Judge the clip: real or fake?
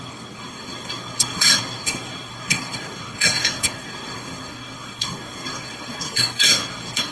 fake